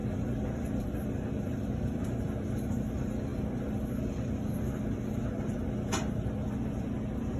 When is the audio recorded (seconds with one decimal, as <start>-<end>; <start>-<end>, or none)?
0.0-7.4